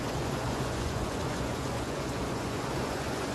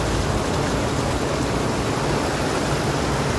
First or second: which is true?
second